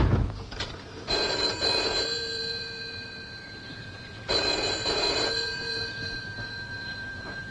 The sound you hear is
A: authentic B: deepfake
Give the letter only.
B